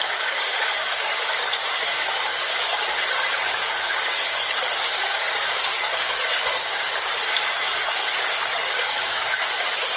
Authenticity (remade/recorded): remade